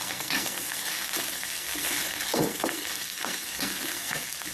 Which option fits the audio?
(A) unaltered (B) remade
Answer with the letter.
B